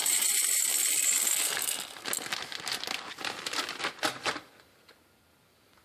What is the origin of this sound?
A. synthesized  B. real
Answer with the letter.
B